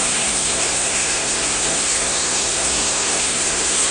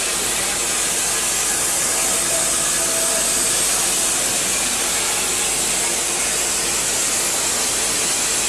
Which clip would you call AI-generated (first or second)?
first